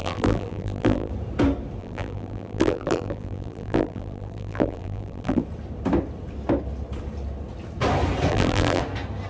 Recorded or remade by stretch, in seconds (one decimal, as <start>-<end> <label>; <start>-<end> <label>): 0.0-1.1 remade; 1.1-1.8 recorded; 1.8-5.4 remade; 5.4-8.3 recorded; 8.3-8.8 remade; 8.8-9.3 recorded